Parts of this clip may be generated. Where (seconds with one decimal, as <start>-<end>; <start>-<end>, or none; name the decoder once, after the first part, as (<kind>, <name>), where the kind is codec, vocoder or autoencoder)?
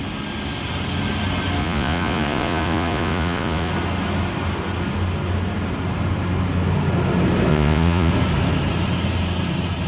1.6-3.7 (vocoder, Vocos); 7.5-8.1